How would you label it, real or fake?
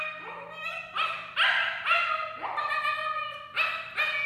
real